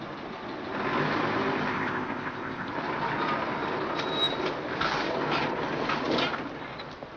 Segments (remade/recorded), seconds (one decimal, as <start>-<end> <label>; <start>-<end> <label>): 0.0-1.7 recorded; 1.7-2.7 remade; 2.7-7.2 recorded